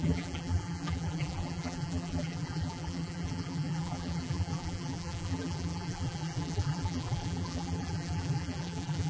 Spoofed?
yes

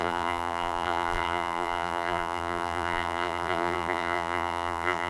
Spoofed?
yes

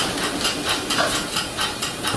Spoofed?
no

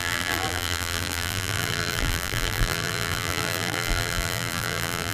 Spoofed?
yes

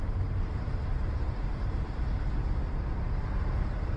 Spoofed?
yes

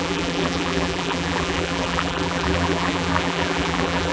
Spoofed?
yes